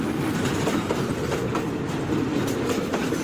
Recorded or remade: recorded